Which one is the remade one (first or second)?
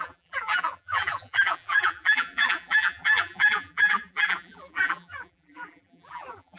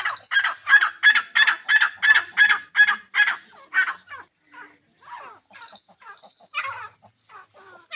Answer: first